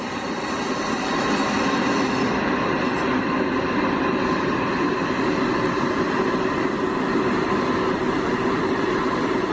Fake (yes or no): no